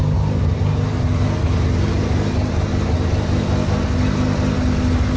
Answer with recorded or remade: recorded